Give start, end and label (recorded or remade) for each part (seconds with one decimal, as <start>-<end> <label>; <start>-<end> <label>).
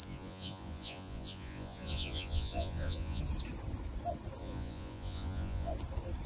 0.0-3.2 remade; 3.2-4.4 recorded; 4.4-5.7 remade; 5.7-6.3 recorded